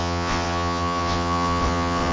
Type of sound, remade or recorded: remade